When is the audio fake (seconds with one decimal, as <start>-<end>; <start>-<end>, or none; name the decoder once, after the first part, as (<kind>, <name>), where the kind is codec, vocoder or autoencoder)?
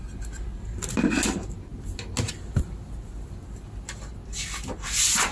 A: none